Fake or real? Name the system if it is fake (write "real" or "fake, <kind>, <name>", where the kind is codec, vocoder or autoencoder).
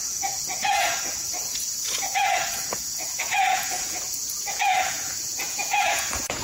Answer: fake, vocoder, Vocos